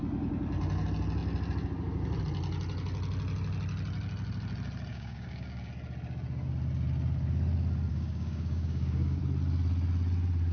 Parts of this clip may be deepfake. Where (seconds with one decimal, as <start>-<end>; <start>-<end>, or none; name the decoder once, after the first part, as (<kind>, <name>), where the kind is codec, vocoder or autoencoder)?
4.9-5.7 (codec, DAC); 7.9-9.2